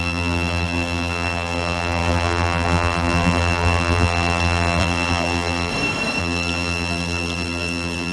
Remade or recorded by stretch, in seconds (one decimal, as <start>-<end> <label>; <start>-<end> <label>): 0.0-5.7 remade; 5.7-6.2 recorded; 6.2-8.1 remade